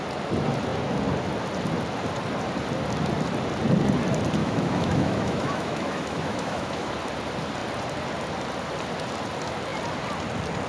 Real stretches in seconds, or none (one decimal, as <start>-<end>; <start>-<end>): 0.0-4.4; 6.9-10.7